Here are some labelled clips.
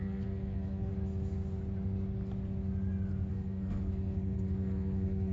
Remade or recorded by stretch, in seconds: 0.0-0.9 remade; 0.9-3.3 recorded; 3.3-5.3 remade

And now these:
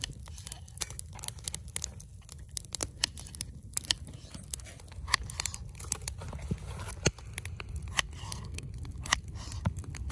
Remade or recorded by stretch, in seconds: 0.0-8.2 recorded; 8.2-8.7 remade; 8.7-10.1 recorded

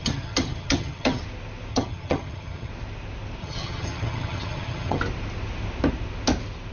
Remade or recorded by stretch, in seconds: 0.0-1.2 remade; 1.2-1.7 recorded; 1.7-2.7 remade; 2.7-3.4 recorded; 3.4-5.0 remade; 5.0-6.7 recorded

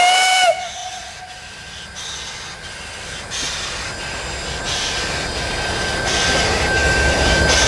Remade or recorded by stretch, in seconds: 0.0-7.7 recorded

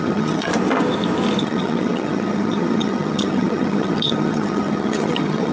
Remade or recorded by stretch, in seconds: 0.0-0.5 remade; 0.5-1.4 recorded; 1.4-5.5 remade

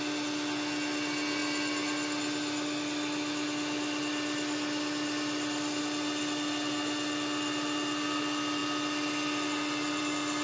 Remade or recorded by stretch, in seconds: 0.0-10.4 recorded

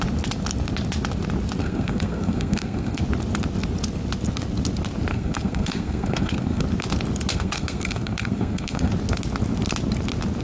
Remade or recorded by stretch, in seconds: 0.0-1.6 recorded; 1.6-3.0 remade; 3.0-5.1 recorded; 5.1-6.6 remade; 6.6-7.3 recorded; 7.3-8.9 remade; 8.9-10.4 recorded

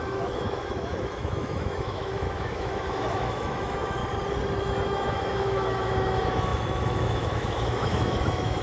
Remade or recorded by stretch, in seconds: 0.0-4.0 remade; 4.0-4.6 recorded; 4.6-8.6 remade